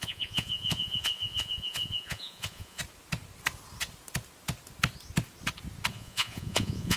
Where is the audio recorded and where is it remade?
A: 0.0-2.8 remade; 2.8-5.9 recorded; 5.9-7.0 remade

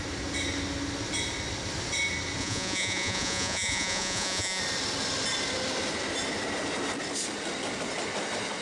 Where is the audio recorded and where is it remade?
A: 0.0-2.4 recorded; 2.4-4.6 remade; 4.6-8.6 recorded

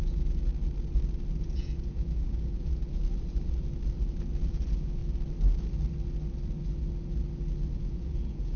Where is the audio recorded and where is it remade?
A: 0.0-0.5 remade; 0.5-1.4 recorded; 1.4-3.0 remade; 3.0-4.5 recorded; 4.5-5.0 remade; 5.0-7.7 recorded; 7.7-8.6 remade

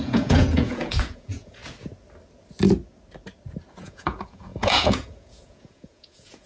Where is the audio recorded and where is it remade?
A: 0.0-1.6 remade; 1.6-3.8 recorded; 3.8-6.5 remade

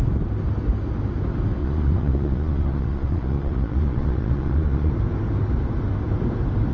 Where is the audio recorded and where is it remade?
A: 0.0-1.6 recorded; 1.6-4.9 remade; 4.9-6.7 recorded

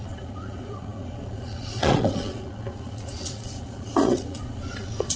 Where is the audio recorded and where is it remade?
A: 0.0-5.2 remade

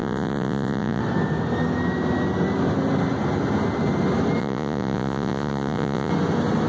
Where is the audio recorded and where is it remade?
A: 0.0-1.0 remade; 1.0-4.4 recorded; 4.4-6.1 remade; 6.1-6.7 recorded

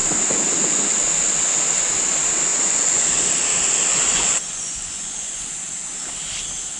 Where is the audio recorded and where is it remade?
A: 0.0-2.5 recorded; 2.5-3.3 remade; 3.3-3.9 recorded; 3.9-5.4 remade; 5.4-6.8 recorded